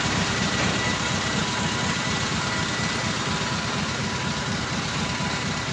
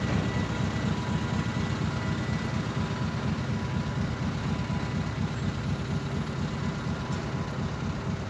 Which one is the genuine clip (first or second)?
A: second